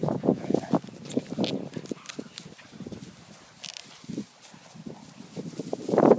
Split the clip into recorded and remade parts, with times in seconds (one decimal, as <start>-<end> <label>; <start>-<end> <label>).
0.0-0.6 remade; 0.6-6.2 recorded